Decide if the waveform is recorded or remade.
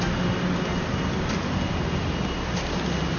recorded